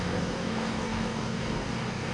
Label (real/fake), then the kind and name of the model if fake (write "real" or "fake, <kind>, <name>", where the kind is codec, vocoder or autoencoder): fake, codec, DAC